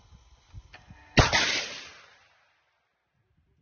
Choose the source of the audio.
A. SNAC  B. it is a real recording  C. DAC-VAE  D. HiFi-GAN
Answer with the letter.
B